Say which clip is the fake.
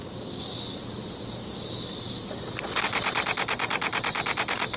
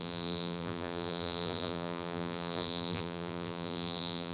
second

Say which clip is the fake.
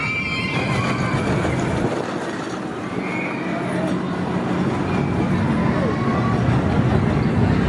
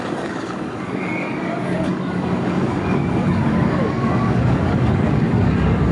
second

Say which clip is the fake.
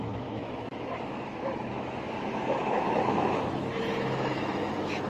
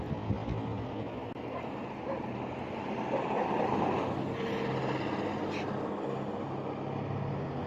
first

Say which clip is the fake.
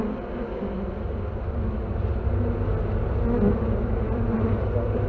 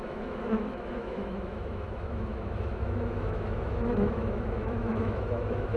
second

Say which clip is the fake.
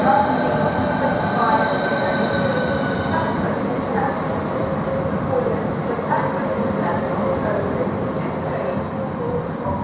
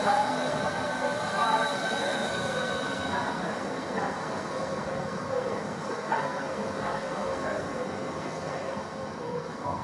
second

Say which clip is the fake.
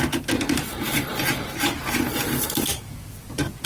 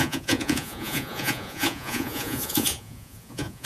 second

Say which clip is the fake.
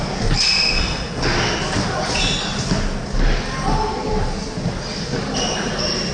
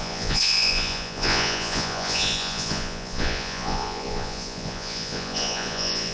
second